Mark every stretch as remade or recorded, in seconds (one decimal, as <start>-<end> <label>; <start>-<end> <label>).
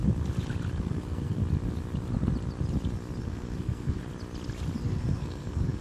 0.0-0.8 recorded; 0.8-1.4 remade; 1.4-3.2 recorded; 3.2-4.0 remade; 4.0-4.8 recorded; 4.8-5.8 remade